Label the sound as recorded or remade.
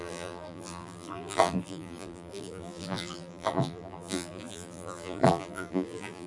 remade